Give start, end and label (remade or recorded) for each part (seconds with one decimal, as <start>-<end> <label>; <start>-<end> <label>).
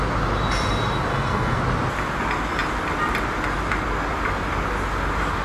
0.0-1.1 recorded; 1.1-1.6 remade; 1.6-5.4 recorded